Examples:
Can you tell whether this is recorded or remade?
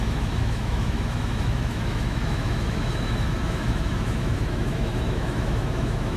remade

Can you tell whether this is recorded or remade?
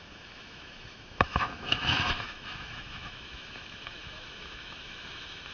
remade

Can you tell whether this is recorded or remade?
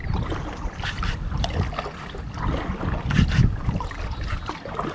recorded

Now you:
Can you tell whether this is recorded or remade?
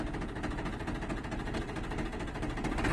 recorded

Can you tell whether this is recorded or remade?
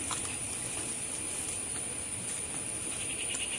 recorded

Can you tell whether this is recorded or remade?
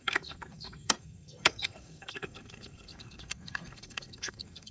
remade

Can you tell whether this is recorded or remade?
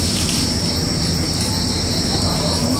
recorded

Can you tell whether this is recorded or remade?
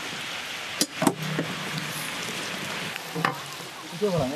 recorded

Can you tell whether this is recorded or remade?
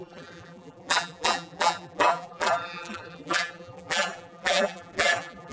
remade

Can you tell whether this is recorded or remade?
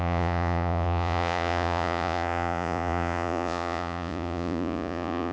remade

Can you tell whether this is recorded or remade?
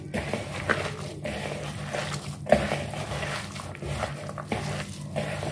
recorded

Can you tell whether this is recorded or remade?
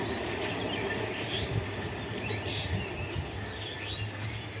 recorded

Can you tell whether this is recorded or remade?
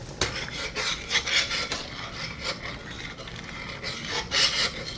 recorded